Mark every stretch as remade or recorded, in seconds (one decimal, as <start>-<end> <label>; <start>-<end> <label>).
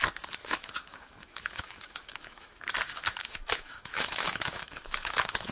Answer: 0.0-0.4 recorded; 0.4-2.6 remade; 2.6-3.2 recorded; 3.2-5.5 remade